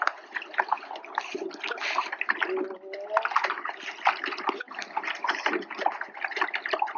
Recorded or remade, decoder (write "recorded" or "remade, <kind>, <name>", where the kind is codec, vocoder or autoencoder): recorded